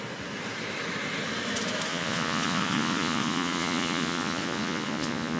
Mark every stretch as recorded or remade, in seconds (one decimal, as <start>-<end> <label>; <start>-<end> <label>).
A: 0.0-1.9 recorded; 1.9-5.4 remade

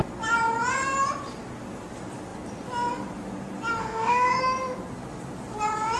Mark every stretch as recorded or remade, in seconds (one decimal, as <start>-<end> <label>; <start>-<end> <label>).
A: 0.0-3.8 recorded; 3.8-4.4 remade; 4.4-6.0 recorded

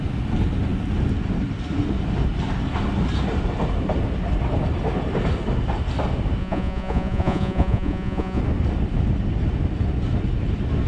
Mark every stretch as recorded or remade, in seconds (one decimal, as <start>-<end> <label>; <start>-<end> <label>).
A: 0.0-6.4 recorded; 6.4-8.4 remade; 8.4-10.9 recorded

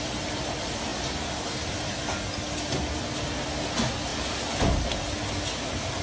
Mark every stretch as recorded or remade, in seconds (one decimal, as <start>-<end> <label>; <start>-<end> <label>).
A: 0.0-6.0 recorded

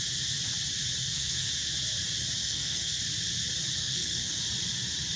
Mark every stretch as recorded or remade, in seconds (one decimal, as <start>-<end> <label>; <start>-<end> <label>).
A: 0.0-1.0 recorded; 1.0-1.5 remade; 1.5-2.4 recorded; 2.4-3.0 remade; 3.0-3.8 recorded; 3.8-4.4 remade; 4.4-5.2 recorded

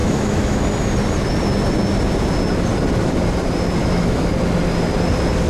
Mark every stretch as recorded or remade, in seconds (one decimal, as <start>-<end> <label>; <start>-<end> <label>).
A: 0.0-0.6 remade; 0.6-3.8 recorded; 3.8-4.3 remade; 4.3-5.5 recorded